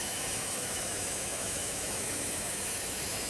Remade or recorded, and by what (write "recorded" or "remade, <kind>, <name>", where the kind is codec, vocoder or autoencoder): remade, autoencoder, DAC-VAE